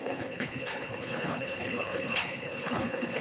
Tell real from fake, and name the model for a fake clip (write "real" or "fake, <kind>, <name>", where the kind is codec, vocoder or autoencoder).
fake, codec, HILCodec